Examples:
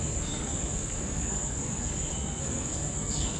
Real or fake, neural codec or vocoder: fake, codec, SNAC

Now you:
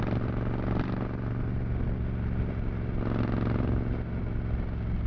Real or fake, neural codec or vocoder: real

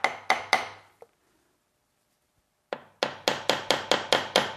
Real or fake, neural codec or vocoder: real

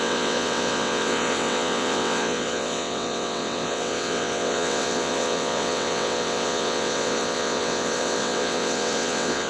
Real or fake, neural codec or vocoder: fake, vocoder, WaveNeXt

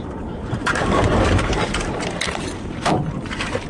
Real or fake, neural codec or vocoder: fake, vocoder, BigVGAN v2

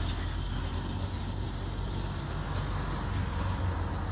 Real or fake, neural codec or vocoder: real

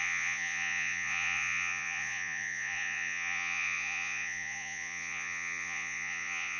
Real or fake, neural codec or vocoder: fake, vocoder, Vocos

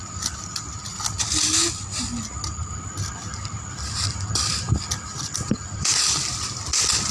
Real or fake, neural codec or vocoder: real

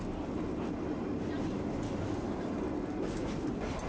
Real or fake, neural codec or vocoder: real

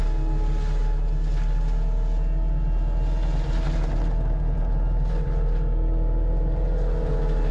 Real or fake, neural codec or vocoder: real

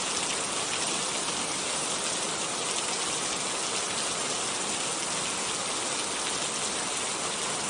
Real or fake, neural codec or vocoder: real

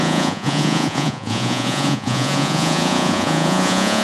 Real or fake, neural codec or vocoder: fake, vocoder, Vocos